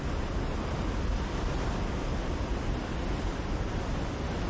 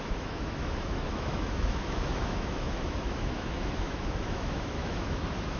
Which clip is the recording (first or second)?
first